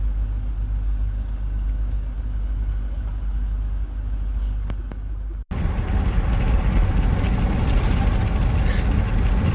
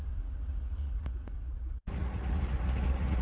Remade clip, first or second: second